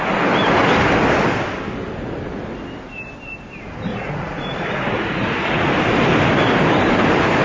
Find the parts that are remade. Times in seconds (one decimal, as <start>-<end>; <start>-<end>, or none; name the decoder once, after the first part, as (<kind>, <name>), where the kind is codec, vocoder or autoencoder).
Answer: 3.9-5.7 (vocoder, Vocos)